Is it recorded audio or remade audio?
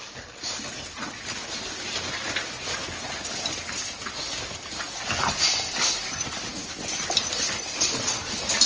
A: recorded